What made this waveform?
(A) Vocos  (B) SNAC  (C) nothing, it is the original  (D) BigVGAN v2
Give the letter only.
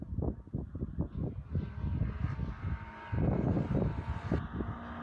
C